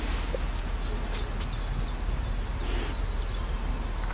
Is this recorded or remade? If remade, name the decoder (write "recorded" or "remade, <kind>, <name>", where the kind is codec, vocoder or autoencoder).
recorded